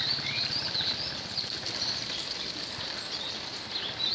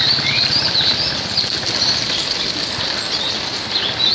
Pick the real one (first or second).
second